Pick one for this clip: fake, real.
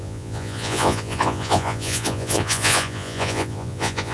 fake